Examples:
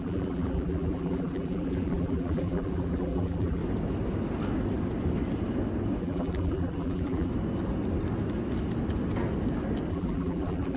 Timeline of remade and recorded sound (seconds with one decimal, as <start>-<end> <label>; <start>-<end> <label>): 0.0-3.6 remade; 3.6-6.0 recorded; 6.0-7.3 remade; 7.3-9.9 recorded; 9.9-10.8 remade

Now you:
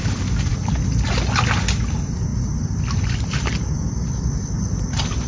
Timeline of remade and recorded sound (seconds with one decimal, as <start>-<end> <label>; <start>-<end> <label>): 0.0-5.3 recorded

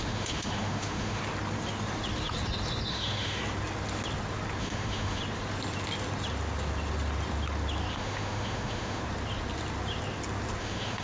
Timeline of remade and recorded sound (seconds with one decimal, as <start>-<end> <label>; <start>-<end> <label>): 0.0-1.2 remade; 1.2-2.9 recorded; 2.9-3.4 remade; 3.4-4.6 recorded; 4.6-5.2 remade; 5.2-7.9 recorded; 7.9-9.0 remade; 9.0-10.6 recorded; 10.6-11.0 remade

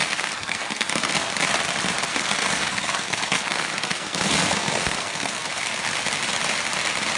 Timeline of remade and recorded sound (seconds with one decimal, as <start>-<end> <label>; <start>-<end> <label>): 0.0-1.3 remade; 1.3-2.1 recorded; 2.1-5.7 remade; 5.7-7.2 recorded

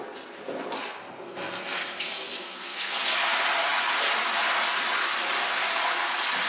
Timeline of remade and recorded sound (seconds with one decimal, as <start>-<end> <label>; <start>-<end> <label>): 0.0-0.8 recorded; 0.8-3.0 remade; 3.0-6.5 recorded

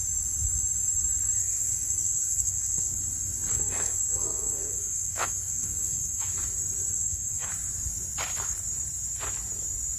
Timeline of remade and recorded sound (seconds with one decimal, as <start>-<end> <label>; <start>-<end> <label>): 0.0-1.4 recorded; 1.4-3.0 remade; 3.0-3.5 recorded; 3.5-6.3 remade; 6.3-6.9 recorded; 6.9-7.5 remade; 7.5-10.0 recorded

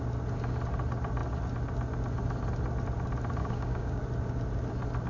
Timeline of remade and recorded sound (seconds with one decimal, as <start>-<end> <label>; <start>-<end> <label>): 0.0-3.4 recorded; 3.4-4.0 remade; 4.0-5.1 recorded